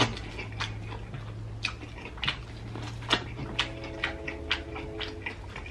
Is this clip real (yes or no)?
yes